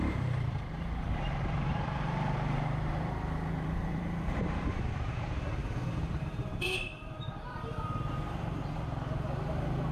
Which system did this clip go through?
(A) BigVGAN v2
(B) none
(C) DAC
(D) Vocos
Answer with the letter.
A